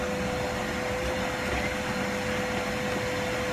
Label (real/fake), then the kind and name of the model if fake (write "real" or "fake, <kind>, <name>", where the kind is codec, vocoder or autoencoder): real